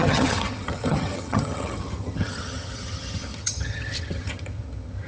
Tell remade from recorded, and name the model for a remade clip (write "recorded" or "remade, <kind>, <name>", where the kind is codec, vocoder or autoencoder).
remade, vocoder, HiFi-GAN